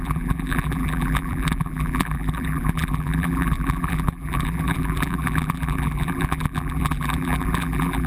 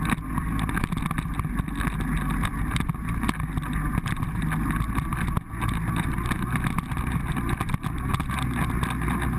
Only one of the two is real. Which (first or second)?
second